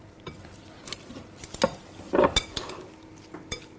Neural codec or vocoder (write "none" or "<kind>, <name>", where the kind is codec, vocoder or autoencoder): none